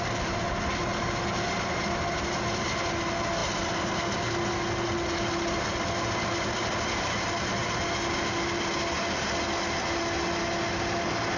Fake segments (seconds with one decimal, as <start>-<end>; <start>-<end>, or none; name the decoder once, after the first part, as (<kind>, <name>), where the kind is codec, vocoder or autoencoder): none